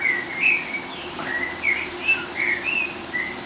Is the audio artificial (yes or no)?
no